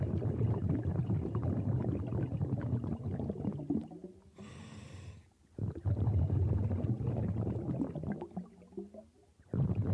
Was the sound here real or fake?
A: real